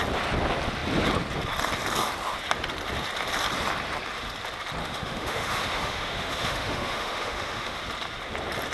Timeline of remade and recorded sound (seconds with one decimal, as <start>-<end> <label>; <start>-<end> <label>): 0.0-4.8 recorded; 4.8-7.8 remade; 7.8-8.7 recorded